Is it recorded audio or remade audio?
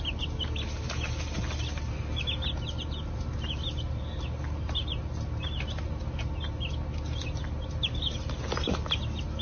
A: recorded